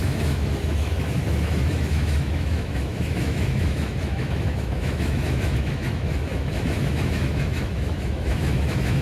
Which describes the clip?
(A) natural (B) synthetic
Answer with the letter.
B